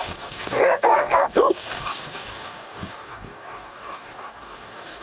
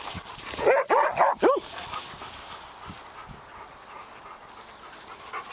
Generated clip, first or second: first